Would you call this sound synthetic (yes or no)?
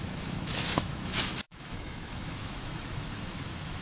yes